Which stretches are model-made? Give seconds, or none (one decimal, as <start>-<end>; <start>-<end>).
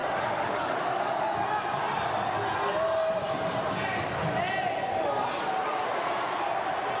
0.0-1.2